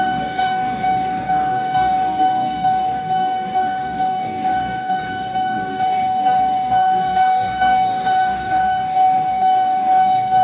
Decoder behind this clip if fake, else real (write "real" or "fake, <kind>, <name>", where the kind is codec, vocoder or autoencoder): fake, codec, DAC